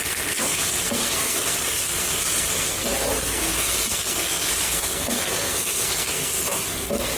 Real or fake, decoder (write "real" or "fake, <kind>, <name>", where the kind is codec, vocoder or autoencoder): fake, codec, SNAC